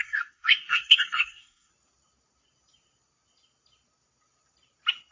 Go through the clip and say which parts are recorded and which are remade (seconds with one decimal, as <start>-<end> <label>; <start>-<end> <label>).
0.0-1.7 remade; 1.7-5.1 recorded